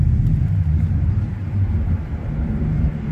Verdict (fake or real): fake